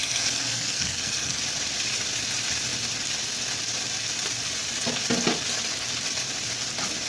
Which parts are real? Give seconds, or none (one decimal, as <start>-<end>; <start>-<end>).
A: 1.4-7.1

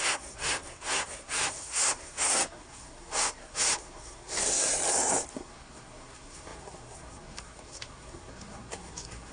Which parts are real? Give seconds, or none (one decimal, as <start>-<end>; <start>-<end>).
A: 4.7-5.3